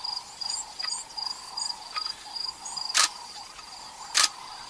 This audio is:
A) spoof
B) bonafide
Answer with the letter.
B